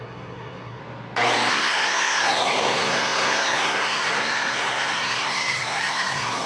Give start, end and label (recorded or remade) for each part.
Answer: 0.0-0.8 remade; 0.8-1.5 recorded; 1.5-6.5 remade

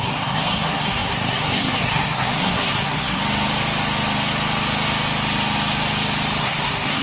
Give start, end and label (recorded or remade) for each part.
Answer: 0.0-3.2 remade; 3.2-6.4 recorded; 6.4-7.0 remade

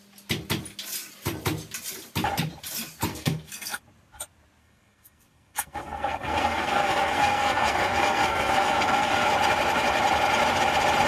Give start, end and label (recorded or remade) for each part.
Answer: 0.0-3.1 recorded; 3.1-3.8 remade; 3.8-4.6 recorded; 4.6-9.3 remade; 9.3-11.1 recorded

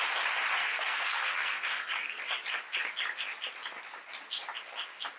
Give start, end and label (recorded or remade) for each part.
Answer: 0.0-0.6 recorded; 0.6-2.2 remade; 2.2-5.2 recorded

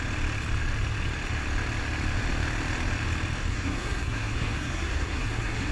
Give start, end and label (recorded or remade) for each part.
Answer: 0.0-3.5 recorded; 3.5-5.7 remade

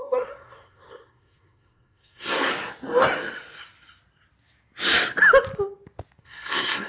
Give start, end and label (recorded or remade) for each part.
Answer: 0.0-2.5 remade; 2.5-6.2 recorded; 6.2-6.9 remade

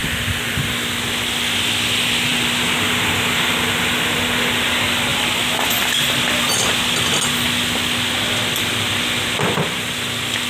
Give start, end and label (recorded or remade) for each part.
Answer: 0.0-10.5 recorded

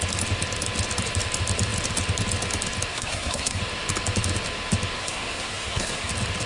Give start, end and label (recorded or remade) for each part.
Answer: 0.0-2.9 recorded; 2.9-3.6 remade; 3.6-5.0 recorded; 5.0-6.1 remade; 6.1-6.5 recorded